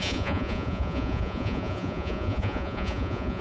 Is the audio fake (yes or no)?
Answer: yes